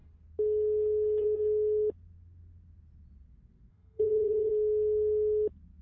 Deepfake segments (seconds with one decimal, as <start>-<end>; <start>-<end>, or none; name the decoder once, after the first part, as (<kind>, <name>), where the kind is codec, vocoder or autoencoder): 3.7-4.5 (vocoder, HiFi-GAN)